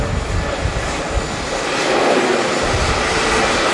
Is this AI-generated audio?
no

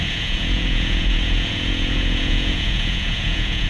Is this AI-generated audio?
yes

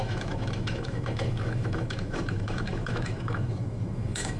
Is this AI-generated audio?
yes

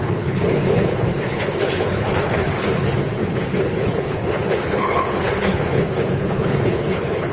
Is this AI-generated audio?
yes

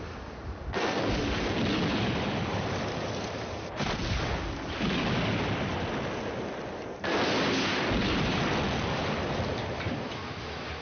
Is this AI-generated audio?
no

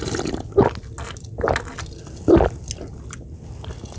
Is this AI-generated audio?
no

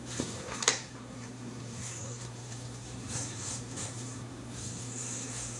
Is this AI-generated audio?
yes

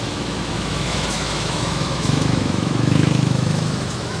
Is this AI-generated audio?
yes